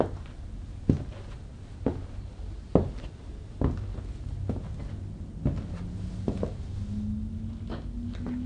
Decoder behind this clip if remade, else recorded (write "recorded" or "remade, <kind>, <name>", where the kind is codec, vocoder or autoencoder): recorded